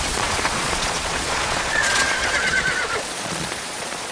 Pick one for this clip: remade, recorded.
remade